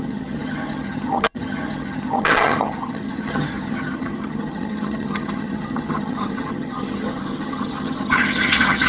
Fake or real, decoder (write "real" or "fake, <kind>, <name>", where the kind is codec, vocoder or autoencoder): fake, vocoder, HiFi-GAN